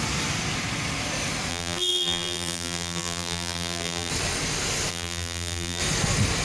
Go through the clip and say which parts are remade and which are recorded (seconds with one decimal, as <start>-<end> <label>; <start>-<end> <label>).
0.0-1.5 recorded; 1.5-4.1 remade; 4.1-4.9 recorded; 4.9-5.8 remade; 5.8-6.4 recorded